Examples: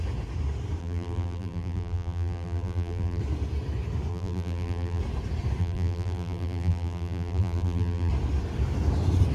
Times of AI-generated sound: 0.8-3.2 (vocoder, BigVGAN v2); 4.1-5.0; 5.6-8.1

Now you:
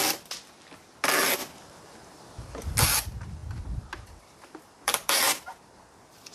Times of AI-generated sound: 3.4-5.8 (vocoder, BigVGAN v2)

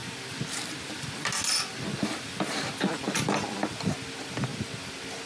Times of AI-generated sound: none

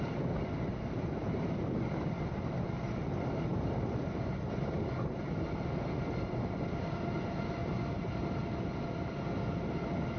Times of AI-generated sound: none

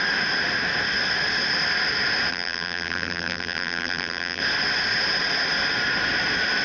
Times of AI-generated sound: 2.3-4.4 (vocoder, BigVGAN v2)

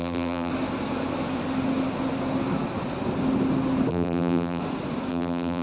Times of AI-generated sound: 0.0-0.5 (vocoder, BigVGAN v2); 3.9-4.6; 5.1-5.6

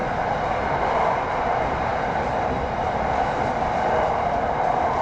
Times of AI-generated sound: 0.8-5.0 (vocoder, BigVGAN v2)

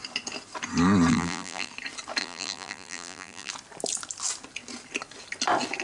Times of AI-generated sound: 1.1-1.7 (vocoder, BigVGAN v2); 2.2-3.5